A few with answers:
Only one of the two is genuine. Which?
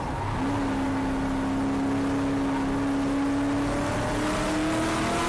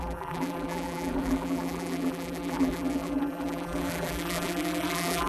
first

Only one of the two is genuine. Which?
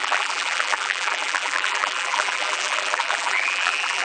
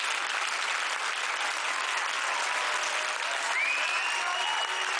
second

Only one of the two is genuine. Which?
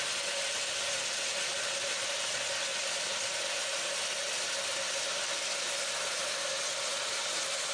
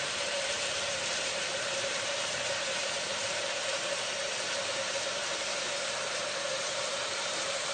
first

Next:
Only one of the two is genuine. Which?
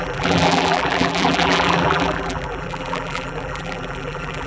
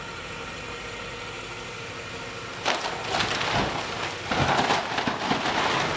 second